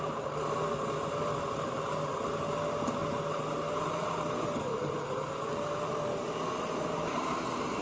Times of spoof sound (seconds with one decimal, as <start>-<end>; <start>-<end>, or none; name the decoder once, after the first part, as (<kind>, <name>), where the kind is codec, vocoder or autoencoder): none

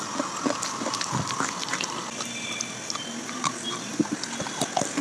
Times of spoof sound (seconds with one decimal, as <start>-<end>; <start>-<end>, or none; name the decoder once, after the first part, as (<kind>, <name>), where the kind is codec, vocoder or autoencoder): none

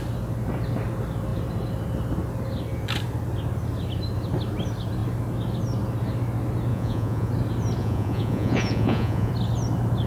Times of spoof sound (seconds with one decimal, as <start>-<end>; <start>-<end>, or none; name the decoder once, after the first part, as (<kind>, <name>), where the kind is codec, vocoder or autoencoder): 6.7-7.3 (vocoder, Vocos); 7.8-9.3

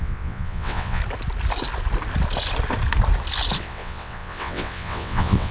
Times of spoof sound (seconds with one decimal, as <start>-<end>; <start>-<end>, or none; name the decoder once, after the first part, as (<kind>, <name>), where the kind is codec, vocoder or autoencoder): 0.0-1.0 (vocoder, WaveNeXt); 3.6-5.5

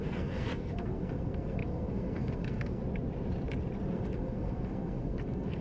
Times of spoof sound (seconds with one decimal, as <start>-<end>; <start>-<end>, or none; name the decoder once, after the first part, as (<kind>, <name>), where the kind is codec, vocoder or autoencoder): 0.0-2.8 (codec, SNAC); 3.9-5.6